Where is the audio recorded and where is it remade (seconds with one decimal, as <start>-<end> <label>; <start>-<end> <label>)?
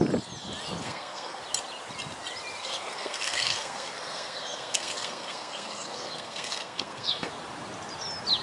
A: 0.0-0.8 recorded; 0.8-1.4 remade; 1.4-2.6 recorded; 2.6-7.3 remade; 7.3-8.4 recorded